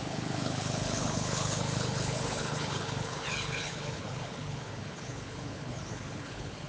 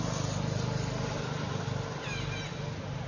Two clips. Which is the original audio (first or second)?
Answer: second